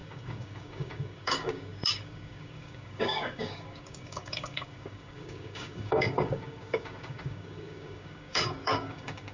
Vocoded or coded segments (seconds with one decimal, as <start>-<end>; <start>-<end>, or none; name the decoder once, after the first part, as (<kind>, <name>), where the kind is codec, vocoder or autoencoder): 0.0-9.3 (codec, DAC)